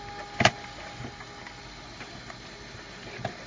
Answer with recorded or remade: recorded